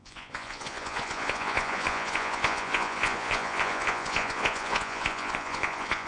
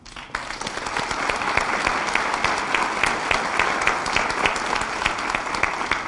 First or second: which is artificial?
first